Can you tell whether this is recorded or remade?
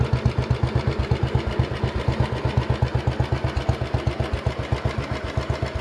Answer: recorded